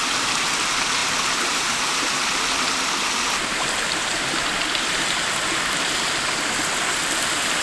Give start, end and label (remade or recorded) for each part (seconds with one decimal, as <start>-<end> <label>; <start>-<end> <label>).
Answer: 0.0-1.0 recorded; 1.0-2.2 remade; 2.2-3.5 recorded; 3.5-4.5 remade; 4.5-7.6 recorded